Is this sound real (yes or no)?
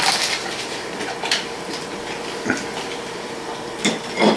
no